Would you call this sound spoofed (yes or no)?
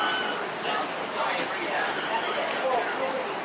no